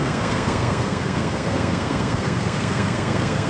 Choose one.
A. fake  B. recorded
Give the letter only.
A